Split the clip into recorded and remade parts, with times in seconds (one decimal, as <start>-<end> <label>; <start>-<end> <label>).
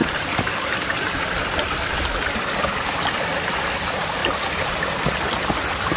0.0-3.6 remade; 3.6-4.2 recorded; 4.2-5.1 remade; 5.1-6.0 recorded